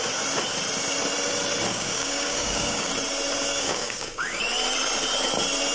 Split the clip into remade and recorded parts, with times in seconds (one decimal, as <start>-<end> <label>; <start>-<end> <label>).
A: 0.0-1.7 recorded; 1.7-2.9 remade; 2.9-3.5 recorded; 3.5-4.4 remade; 4.4-5.7 recorded